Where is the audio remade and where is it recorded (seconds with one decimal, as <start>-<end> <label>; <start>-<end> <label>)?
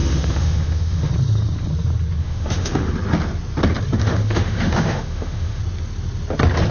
0.0-1.1 remade; 1.1-2.2 recorded; 2.2-2.9 remade; 2.9-4.0 recorded; 4.0-5.6 remade; 5.6-6.7 recorded